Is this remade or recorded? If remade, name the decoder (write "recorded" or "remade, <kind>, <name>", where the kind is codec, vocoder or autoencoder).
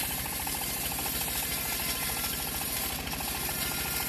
recorded